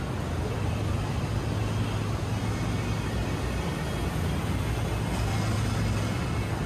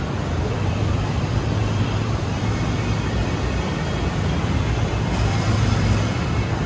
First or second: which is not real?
second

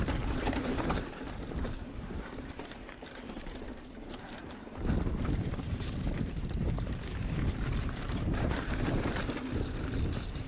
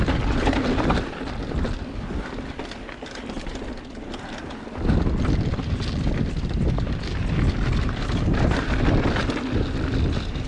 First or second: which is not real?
first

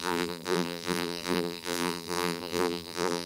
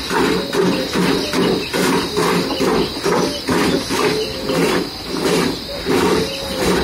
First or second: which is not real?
first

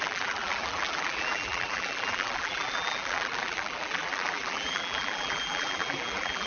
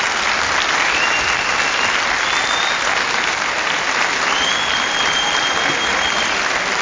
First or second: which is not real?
first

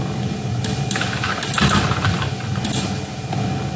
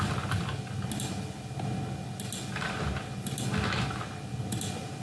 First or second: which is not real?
first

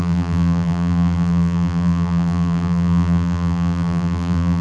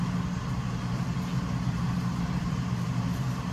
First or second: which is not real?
first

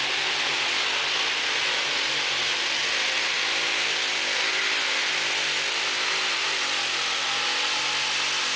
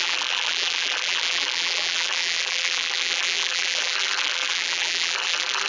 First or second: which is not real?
second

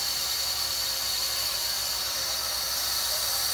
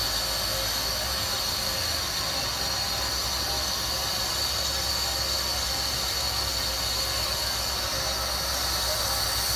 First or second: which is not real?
first